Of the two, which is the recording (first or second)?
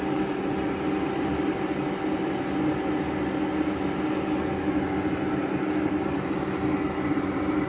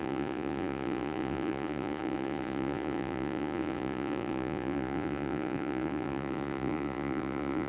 first